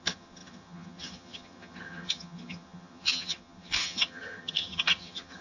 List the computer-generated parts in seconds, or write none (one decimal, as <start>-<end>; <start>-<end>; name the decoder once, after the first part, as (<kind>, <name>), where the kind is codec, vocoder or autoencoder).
0.0-5.4 (vocoder, HiFi-GAN)